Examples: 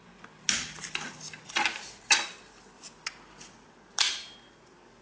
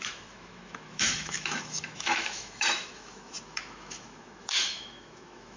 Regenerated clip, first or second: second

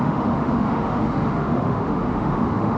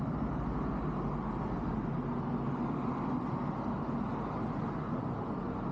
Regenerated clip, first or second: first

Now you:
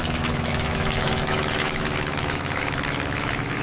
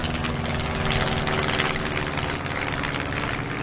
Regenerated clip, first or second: first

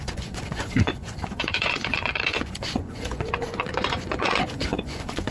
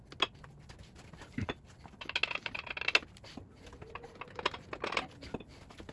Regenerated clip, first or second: first